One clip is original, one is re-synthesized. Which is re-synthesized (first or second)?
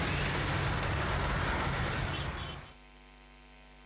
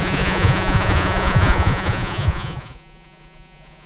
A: second